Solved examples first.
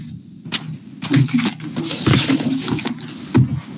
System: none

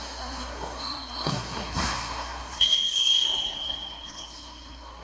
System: codec, SNAC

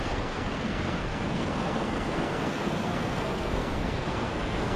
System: codec, SNAC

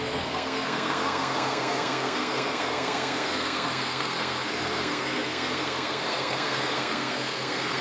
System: codec, SNAC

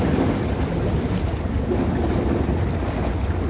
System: none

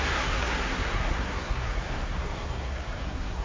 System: codec, SNAC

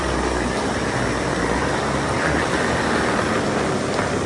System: none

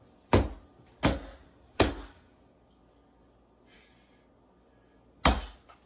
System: none